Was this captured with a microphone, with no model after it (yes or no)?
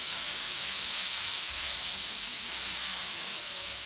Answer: no